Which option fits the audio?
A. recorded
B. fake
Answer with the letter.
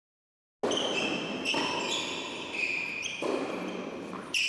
A